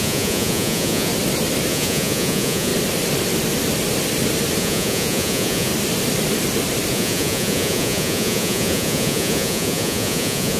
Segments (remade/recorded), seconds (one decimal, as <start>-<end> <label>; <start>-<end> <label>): 0.0-1.1 remade; 1.1-1.7 recorded; 1.7-2.7 remade; 2.7-4.6 recorded; 4.6-5.7 remade; 5.7-6.9 recorded; 6.9-10.6 remade